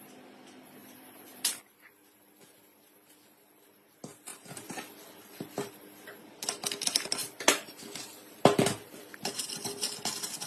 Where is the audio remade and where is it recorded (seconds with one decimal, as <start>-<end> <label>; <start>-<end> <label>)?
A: 0.0-0.8 recorded; 0.8-1.5 remade; 1.5-4.3 recorded; 4.3-5.7 remade; 5.7-7.2 recorded; 7.2-9.2 remade; 9.2-10.5 recorded